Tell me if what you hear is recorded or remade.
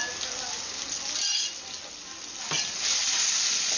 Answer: recorded